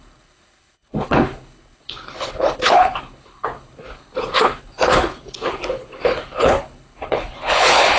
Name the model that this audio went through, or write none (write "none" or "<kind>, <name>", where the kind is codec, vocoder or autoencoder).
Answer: codec, HILCodec